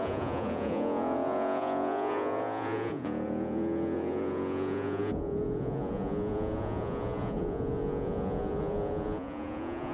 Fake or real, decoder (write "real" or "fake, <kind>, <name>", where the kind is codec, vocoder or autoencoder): fake, vocoder, Vocos